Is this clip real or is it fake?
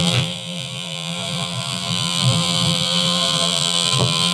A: fake